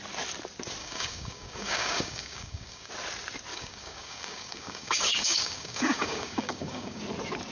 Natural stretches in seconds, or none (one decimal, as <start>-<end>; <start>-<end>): 0.0-0.8; 2.9-3.5; 7.0-7.5